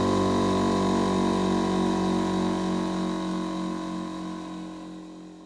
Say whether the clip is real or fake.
real